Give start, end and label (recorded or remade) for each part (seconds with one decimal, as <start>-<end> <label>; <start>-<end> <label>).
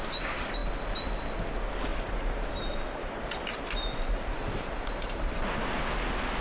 0.0-1.9 recorded; 1.9-5.7 remade; 5.7-6.4 recorded